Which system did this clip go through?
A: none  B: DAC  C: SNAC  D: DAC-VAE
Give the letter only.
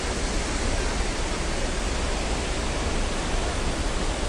A